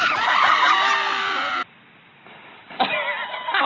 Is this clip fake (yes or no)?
no